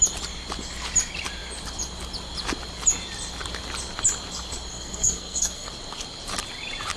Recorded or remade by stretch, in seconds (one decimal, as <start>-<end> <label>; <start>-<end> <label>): 0.0-4.7 recorded; 4.7-5.7 remade; 5.7-7.0 recorded

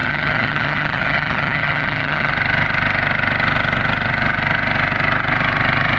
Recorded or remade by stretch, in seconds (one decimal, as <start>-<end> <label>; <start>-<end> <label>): 0.0-2.3 remade; 2.3-6.0 recorded

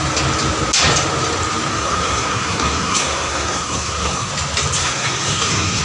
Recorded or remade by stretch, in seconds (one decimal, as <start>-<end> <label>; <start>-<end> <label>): 0.0-1.7 recorded; 1.7-4.3 remade; 4.3-4.8 recorded; 4.8-5.8 remade

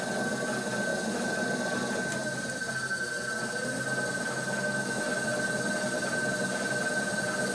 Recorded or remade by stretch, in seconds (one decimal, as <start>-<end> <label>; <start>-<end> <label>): 0.0-7.5 recorded

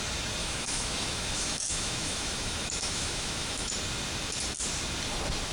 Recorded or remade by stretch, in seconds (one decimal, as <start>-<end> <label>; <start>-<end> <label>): 0.0-0.4 recorded; 0.4-3.7 remade; 3.7-5.5 recorded

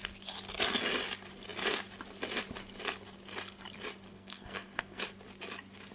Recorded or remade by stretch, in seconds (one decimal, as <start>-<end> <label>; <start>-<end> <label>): 0.0-4.1 recorded; 4.1-5.0 remade; 5.0-5.9 recorded

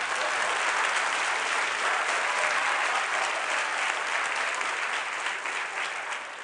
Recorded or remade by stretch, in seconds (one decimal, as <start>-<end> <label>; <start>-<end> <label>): 0.0-6.4 recorded